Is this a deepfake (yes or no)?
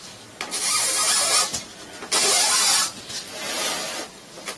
no